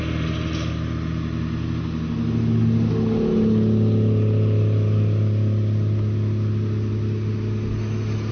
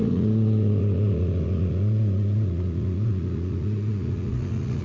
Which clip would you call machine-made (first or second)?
second